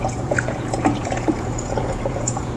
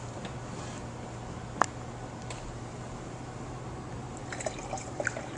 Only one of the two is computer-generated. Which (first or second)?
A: first